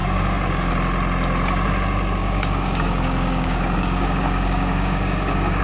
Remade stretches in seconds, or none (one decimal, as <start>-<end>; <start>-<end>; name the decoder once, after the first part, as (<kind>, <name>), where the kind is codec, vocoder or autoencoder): 0.0-0.7 (codec, DAC); 2.2-5.6